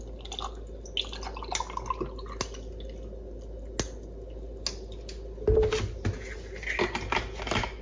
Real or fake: real